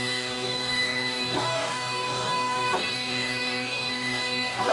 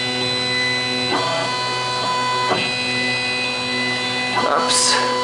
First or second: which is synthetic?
first